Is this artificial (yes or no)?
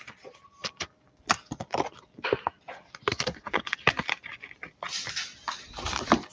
yes